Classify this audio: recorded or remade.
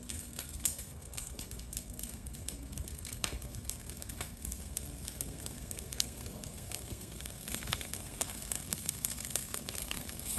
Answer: remade